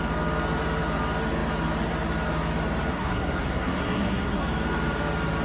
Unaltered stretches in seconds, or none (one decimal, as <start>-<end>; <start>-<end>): 0.0-2.9; 4.4-5.4